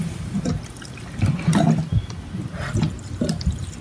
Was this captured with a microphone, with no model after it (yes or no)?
yes